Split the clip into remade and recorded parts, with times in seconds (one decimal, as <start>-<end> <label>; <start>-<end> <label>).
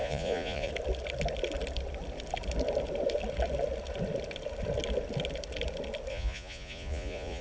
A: 0.0-0.7 remade; 0.7-6.1 recorded; 6.1-7.4 remade